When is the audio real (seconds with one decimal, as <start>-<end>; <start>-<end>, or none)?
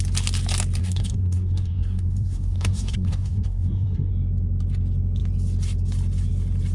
0.0-0.8; 4.1-6.7